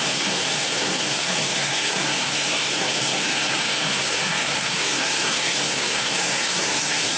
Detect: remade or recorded remade